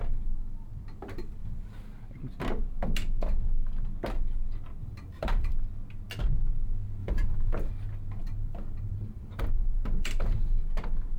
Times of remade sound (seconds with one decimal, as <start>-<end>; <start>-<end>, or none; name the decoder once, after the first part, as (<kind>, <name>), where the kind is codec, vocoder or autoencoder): 4.8-5.5 (vocoder, BigVGAN v2); 7.0-7.7; 8.2-10.7